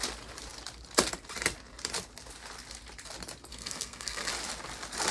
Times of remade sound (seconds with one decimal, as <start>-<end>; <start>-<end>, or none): 3.5-4.3